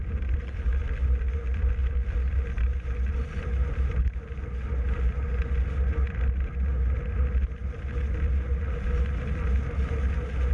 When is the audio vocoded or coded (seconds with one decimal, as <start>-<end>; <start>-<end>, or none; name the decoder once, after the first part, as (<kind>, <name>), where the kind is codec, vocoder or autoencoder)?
none